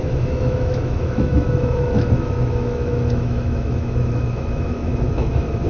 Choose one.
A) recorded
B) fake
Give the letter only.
B